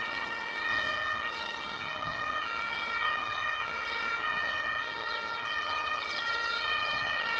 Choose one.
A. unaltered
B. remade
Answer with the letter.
B